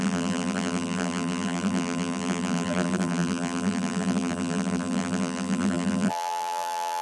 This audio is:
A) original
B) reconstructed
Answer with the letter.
B